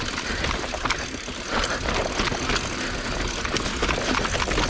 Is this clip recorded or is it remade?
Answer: recorded